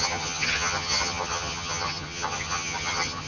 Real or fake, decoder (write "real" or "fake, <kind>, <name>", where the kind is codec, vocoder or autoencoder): fake, vocoder, HiFi-GAN